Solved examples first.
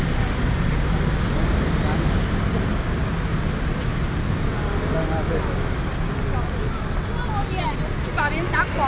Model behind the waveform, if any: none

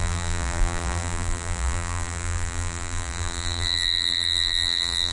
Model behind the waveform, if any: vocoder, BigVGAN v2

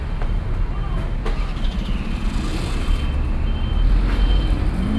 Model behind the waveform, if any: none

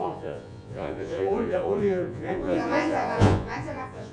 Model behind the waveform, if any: vocoder, Vocos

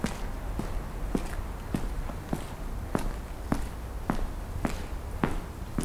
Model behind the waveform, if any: none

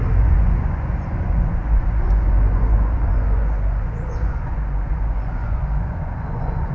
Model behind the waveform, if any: vocoder, Vocos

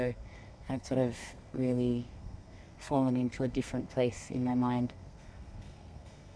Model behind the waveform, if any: codec, SNAC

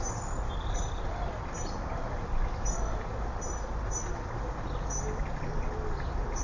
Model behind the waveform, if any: none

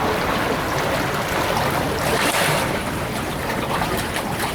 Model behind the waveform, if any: none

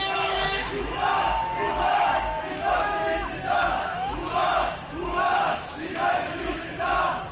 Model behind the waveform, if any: autoencoder, DAC-VAE